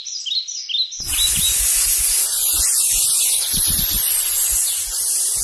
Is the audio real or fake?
real